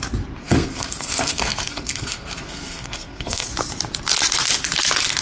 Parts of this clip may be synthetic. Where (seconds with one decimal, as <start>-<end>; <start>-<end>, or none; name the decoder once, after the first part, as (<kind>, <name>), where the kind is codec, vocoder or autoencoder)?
0.4-3.5 (codec, SNAC)